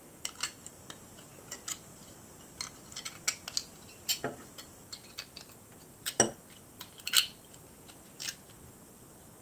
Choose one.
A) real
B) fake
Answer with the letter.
A